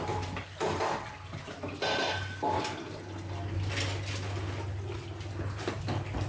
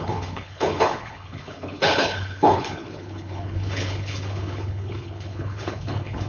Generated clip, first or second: second